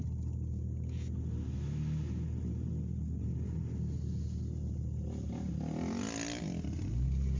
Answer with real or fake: real